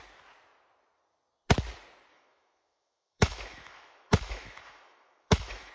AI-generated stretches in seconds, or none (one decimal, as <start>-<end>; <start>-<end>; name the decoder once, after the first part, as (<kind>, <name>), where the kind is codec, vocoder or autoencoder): 2.1-5.7 (autoencoder, DAC-VAE)